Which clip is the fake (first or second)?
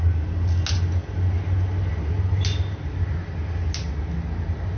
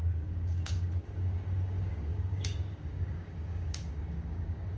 second